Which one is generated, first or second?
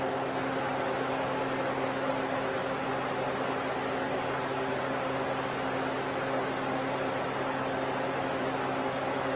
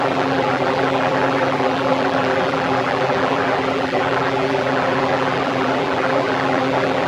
second